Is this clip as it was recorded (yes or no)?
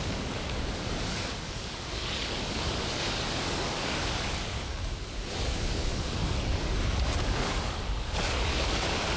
no